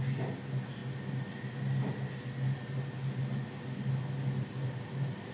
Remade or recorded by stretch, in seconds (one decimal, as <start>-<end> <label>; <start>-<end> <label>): 0.0-5.3 recorded